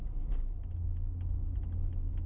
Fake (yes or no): no